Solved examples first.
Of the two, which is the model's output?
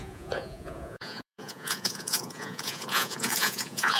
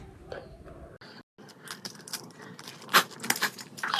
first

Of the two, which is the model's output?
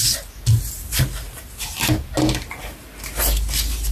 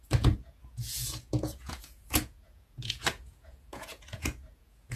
second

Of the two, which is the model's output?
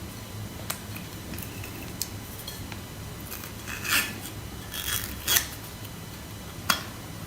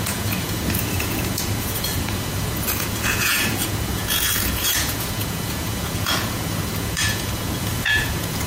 second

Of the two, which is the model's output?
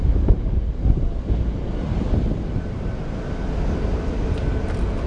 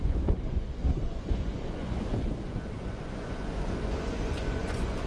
second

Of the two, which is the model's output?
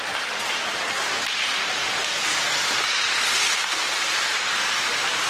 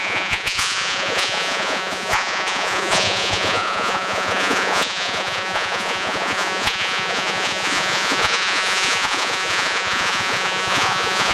second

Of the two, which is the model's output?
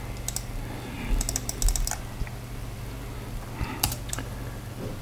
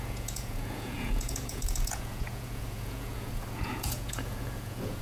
second